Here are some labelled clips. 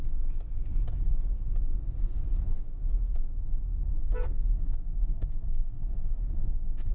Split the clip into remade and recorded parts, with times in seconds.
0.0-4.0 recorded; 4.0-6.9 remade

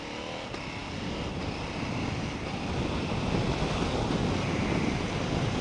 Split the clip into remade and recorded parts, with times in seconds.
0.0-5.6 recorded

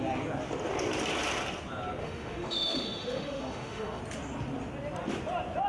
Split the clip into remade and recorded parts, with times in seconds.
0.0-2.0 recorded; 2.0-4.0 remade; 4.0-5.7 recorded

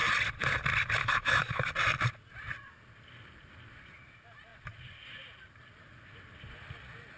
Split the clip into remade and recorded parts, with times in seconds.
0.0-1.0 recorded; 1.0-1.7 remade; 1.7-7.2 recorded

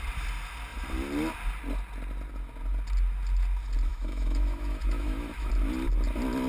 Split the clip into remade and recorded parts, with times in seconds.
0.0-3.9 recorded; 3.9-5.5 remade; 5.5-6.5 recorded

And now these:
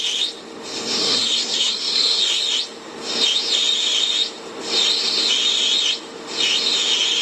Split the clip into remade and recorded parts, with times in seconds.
0.0-1.0 recorded; 1.0-2.4 remade; 2.4-7.2 recorded

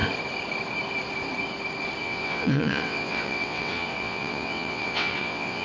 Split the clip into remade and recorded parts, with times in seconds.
0.0-2.0 recorded; 2.0-5.6 remade

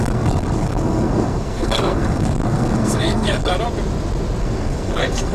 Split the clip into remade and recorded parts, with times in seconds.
0.0-3.5 remade; 3.5-4.4 recorded; 4.4-5.3 remade